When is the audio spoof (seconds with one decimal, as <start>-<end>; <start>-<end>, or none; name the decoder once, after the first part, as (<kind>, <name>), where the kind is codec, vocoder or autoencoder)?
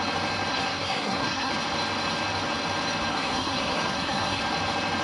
0.5-1.5 (codec, SNAC); 3.1-4.4